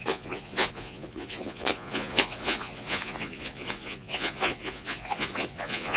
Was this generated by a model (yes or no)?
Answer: yes